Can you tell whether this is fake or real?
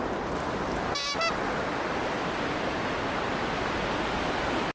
real